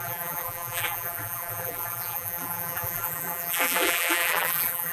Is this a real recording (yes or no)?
no